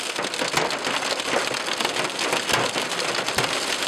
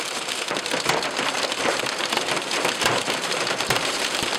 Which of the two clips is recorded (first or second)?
first